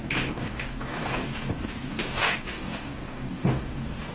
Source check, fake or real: fake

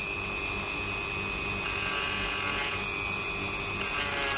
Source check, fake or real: real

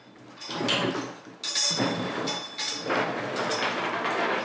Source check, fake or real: real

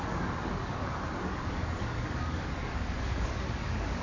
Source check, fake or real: fake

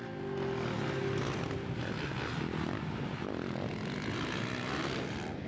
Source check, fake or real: real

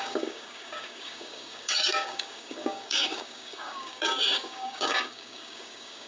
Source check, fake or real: fake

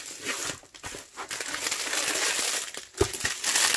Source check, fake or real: real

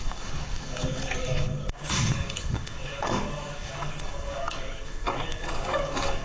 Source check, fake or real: fake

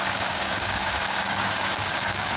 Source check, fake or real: fake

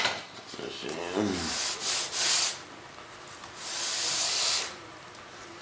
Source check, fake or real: real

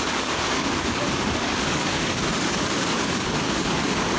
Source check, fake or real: fake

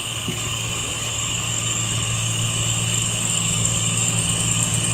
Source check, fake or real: fake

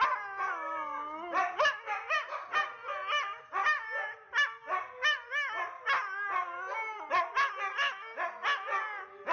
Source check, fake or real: real